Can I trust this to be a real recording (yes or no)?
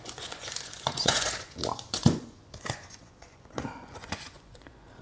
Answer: no